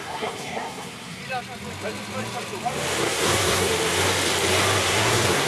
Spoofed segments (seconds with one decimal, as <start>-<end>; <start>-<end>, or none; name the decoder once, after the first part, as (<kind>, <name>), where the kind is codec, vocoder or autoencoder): 0.0-1.2 (codec, SNAC); 3.0-3.7; 4.8-5.5